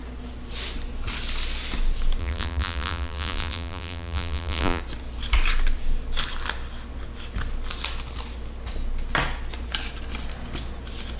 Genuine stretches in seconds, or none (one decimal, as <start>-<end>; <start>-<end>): 0.0-2.2; 4.8-11.2